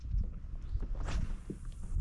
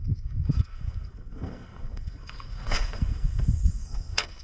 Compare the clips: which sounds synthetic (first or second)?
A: second